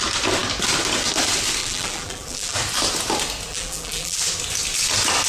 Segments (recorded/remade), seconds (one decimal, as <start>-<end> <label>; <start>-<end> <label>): 0.0-1.6 recorded; 1.6-2.6 remade; 2.6-3.5 recorded; 3.5-4.2 remade; 4.2-5.3 recorded